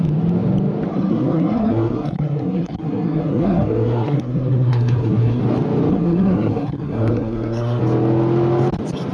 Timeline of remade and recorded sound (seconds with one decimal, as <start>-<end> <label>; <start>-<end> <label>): 0.0-0.9 recorded; 0.9-5.4 remade; 5.4-5.9 recorded; 5.9-7.8 remade; 7.8-9.1 recorded